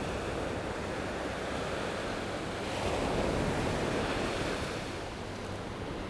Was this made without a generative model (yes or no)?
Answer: yes